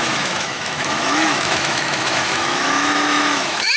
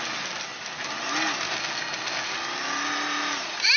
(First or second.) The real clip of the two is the second